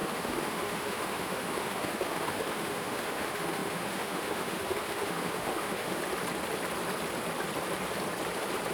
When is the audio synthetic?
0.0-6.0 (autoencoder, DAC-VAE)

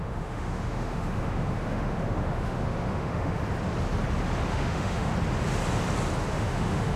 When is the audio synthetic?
0.0-3.4 (autoencoder, DAC-VAE); 4.5-5.1; 6.3-7.0

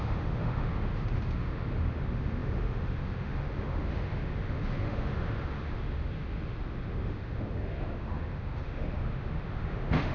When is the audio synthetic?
0.0-10.1 (autoencoder, DAC-VAE)

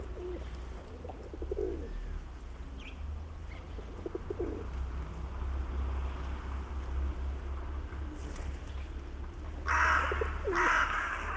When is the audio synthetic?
none

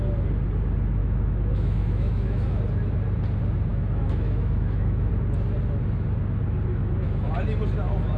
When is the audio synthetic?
1.0-2.6 (autoencoder, DAC-VAE); 3.7-5.1; 6.7-7.3

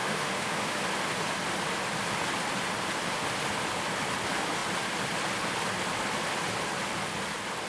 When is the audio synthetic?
0.0-0.8 (autoencoder, DAC-VAE)

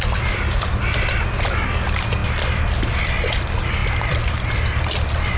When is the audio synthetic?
none